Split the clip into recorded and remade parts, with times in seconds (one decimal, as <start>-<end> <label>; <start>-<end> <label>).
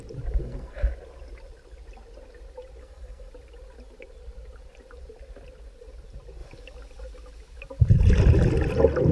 0.0-0.4 recorded; 0.4-0.9 remade; 0.9-2.8 recorded; 2.8-3.3 remade; 3.3-9.1 recorded